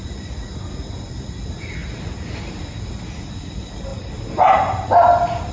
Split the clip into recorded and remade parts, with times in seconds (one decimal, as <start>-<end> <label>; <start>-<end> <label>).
0.0-5.5 recorded